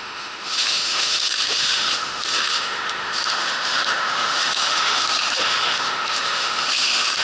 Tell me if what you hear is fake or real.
fake